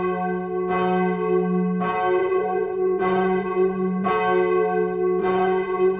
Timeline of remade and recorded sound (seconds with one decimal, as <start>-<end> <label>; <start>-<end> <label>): 0.0-2.2 recorded; 2.2-4.1 remade; 4.1-5.2 recorded; 5.2-6.0 remade